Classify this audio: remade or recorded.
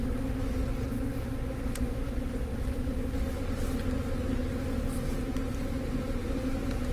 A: recorded